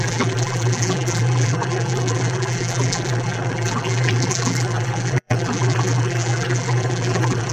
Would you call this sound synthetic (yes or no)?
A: yes